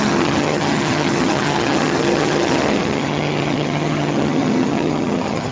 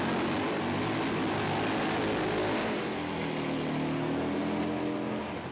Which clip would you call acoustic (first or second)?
second